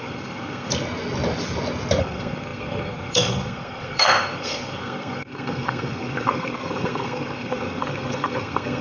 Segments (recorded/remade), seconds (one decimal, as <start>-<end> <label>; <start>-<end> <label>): 0.0-0.7 remade; 0.7-2.0 recorded; 2.0-8.8 remade